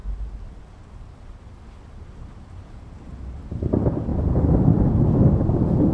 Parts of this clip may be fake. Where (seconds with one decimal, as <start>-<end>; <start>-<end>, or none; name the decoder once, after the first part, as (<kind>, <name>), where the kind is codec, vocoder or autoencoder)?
none